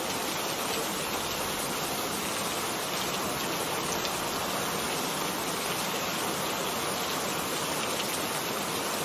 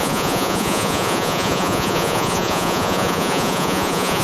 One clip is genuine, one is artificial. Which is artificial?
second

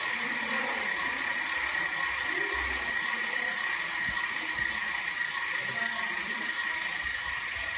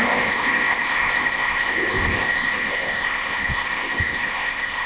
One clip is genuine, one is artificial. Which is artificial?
second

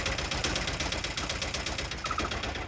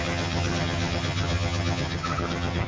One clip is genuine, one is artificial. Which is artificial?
second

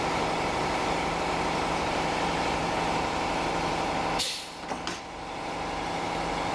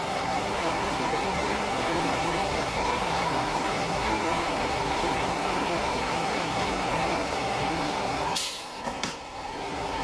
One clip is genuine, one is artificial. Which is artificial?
second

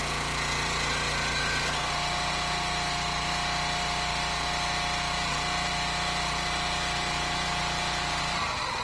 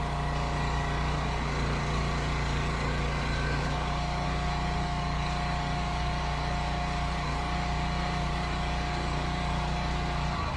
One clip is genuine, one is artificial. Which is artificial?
second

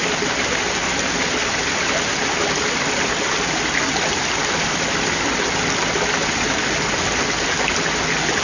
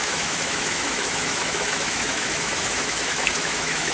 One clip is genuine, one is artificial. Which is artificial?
second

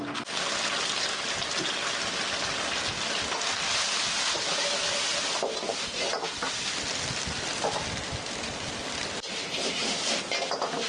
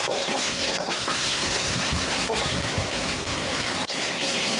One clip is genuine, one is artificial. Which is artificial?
second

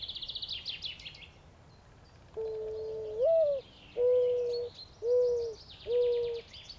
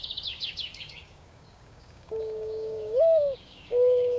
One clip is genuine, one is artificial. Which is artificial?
second